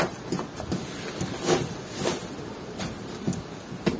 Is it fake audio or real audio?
real